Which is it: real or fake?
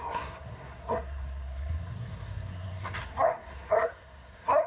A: fake